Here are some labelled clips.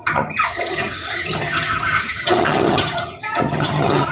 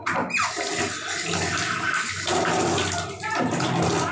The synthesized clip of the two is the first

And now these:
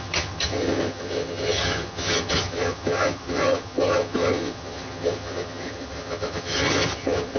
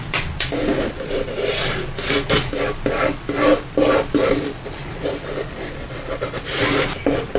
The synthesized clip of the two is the first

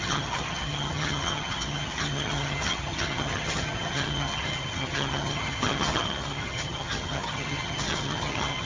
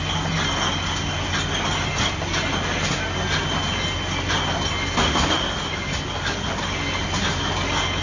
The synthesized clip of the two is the first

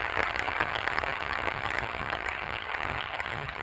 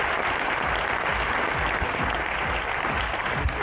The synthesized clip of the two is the first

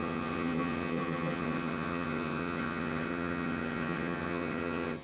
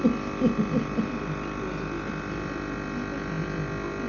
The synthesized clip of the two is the first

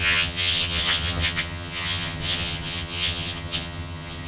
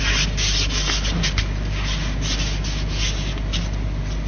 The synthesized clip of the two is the first